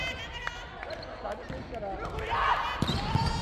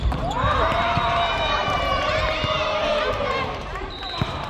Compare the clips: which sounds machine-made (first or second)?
second